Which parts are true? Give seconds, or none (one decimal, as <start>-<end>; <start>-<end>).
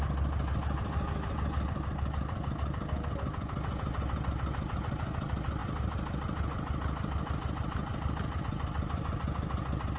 0.0-10.0